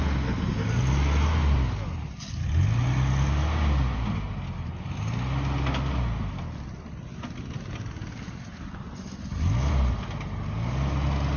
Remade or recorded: recorded